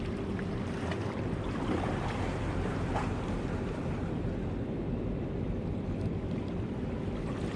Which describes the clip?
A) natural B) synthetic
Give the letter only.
A